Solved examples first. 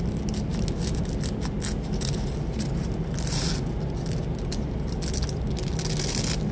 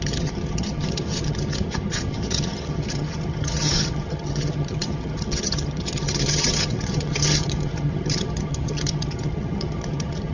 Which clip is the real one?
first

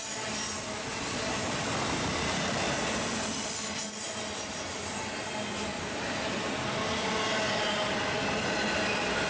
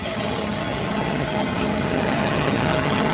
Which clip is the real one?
first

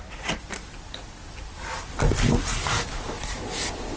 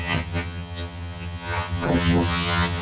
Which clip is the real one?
first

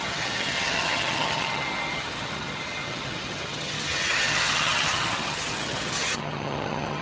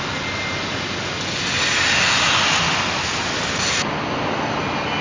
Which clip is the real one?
second